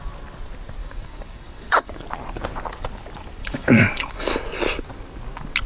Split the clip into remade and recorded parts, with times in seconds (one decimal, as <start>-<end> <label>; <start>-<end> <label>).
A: 0.0-0.8 recorded; 0.8-1.9 remade; 1.9-3.4 recorded; 3.4-4.4 remade; 4.4-5.7 recorded